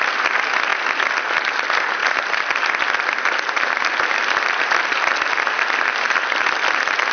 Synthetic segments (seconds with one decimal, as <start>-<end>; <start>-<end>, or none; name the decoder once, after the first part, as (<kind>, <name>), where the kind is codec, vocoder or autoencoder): none